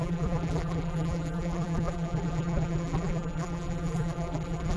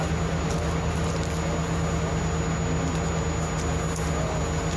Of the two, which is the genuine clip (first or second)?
second